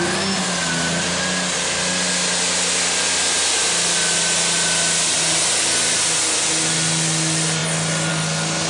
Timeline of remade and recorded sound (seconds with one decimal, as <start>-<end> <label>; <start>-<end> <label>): 0.0-8.7 recorded

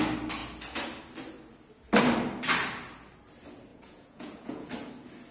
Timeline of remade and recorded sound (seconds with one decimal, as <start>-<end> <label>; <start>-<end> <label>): 0.0-3.7 recorded; 3.7-4.7 remade; 4.7-5.3 recorded

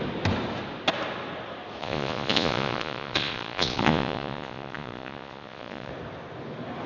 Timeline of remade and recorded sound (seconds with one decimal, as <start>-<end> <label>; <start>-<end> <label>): 0.0-1.8 recorded; 1.8-5.9 remade; 5.9-6.9 recorded

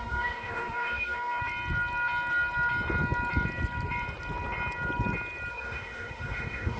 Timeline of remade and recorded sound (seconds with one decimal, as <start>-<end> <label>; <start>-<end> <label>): 0.0-1.4 remade; 1.4-5.5 recorded; 5.5-6.8 remade

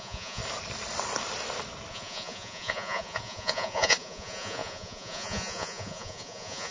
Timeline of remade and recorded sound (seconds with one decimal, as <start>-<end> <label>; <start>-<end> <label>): 0.0-0.4 remade; 0.4-1.9 recorded; 1.9-6.7 remade

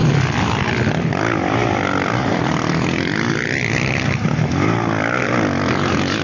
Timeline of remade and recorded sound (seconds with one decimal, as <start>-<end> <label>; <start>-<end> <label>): 0.0-1.6 recorded; 1.6-5.3 remade; 5.3-6.2 recorded

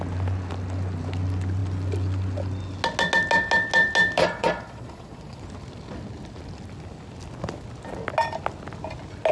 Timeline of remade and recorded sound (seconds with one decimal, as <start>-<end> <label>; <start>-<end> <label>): 0.0-4.2 recorded; 4.2-5.4 remade; 5.4-9.3 recorded